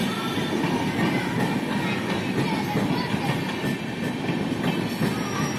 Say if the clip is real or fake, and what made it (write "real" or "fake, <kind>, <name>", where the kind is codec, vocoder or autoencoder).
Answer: real